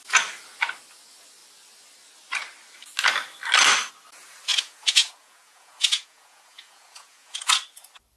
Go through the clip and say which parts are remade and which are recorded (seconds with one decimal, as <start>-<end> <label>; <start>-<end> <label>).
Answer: 0.0-4.5 recorded; 4.5-7.4 remade; 7.4-8.2 recorded